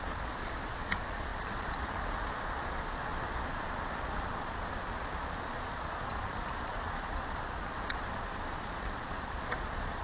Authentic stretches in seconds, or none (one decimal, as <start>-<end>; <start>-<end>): none